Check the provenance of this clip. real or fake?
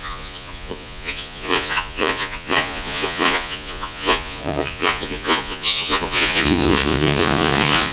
fake